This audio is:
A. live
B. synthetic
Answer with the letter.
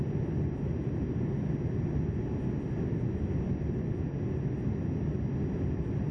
A